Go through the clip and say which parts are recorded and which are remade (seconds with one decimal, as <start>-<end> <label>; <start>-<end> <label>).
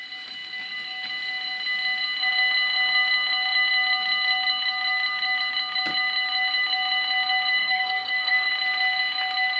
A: 0.0-7.6 recorded; 7.6-8.5 remade; 8.5-9.6 recorded